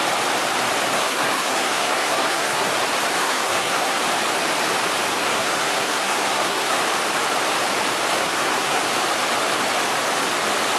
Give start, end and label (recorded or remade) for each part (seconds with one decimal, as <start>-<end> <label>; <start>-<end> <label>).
0.0-0.9 recorded; 0.9-2.7 remade; 2.7-3.2 recorded; 3.2-4.0 remade; 4.0-5.2 recorded; 5.2-6.8 remade; 6.8-8.2 recorded; 8.2-8.8 remade; 8.8-10.8 recorded